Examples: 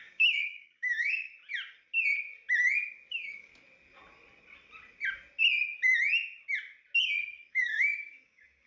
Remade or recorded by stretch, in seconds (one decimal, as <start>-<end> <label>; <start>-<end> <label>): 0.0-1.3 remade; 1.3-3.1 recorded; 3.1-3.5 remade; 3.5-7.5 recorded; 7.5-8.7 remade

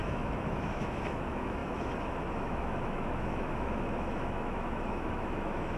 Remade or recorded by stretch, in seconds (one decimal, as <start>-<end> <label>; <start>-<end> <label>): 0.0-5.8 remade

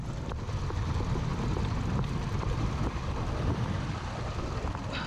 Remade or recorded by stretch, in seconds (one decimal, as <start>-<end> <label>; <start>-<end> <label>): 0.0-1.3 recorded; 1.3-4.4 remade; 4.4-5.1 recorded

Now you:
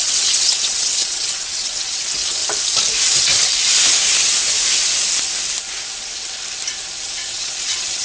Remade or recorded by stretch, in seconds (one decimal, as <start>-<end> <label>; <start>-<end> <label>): 0.0-2.4 remade; 2.4-7.0 recorded; 7.0-8.0 remade

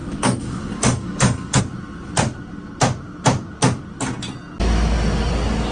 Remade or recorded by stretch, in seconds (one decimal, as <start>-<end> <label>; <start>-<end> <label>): 0.0-1.6 remade; 1.6-5.7 recorded

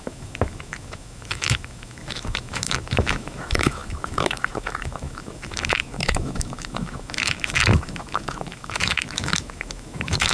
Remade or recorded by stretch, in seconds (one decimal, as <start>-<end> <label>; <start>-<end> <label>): 0.0-10.3 remade

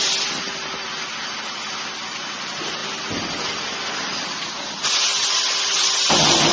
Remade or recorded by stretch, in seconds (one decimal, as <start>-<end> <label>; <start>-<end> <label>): 0.0-6.5 recorded

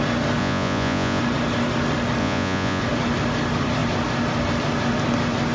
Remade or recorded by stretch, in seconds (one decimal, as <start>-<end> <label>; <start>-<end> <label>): 0.0-0.4 recorded; 0.4-1.2 remade; 1.2-2.2 recorded; 2.2-2.8 remade; 2.8-5.5 recorded